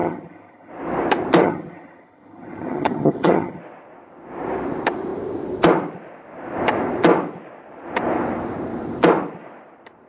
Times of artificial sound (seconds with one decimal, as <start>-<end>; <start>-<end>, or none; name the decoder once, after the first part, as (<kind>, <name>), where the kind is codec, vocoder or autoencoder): 0.0-0.7 (vocoder, HiFi-GAN); 1.4-3.6